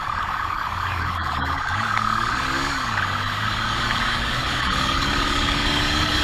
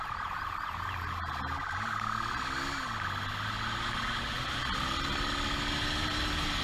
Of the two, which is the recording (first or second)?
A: second